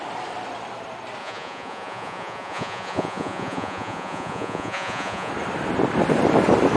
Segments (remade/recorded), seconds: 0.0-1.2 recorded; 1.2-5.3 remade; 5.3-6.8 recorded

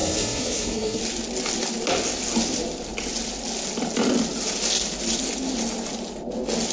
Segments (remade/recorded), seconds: 0.0-1.0 remade; 1.0-6.7 recorded

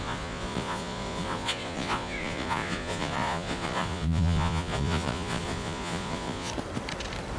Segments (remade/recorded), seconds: 0.0-6.5 remade; 6.5-7.4 recorded

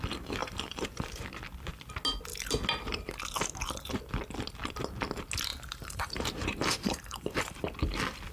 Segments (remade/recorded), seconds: 0.0-0.4 recorded; 0.4-1.2 remade; 1.2-5.5 recorded; 5.5-7.6 remade; 7.6-8.3 recorded

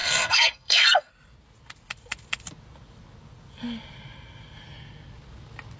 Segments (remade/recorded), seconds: 0.0-1.1 remade; 1.1-5.8 recorded

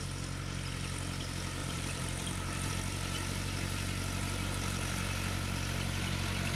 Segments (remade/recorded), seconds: 0.0-1.6 recorded; 1.6-2.7 remade; 2.7-6.6 recorded

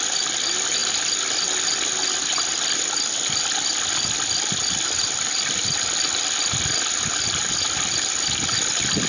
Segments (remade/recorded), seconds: 0.0-9.1 recorded